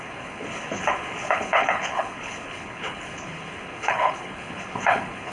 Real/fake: fake